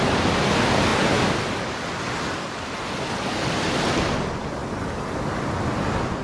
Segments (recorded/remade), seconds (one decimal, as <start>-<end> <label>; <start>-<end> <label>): 0.0-0.9 recorded; 0.9-2.8 remade; 2.8-4.6 recorded; 4.6-5.4 remade; 5.4-6.2 recorded